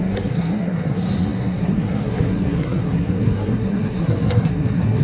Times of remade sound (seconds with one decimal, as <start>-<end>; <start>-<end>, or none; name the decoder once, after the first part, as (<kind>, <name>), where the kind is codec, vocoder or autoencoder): 0.0-5.0 (codec, SNAC)